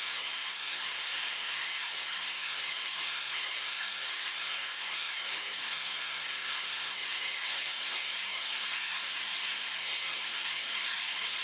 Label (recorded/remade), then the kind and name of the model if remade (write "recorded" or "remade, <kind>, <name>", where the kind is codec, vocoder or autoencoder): remade, codec, SNAC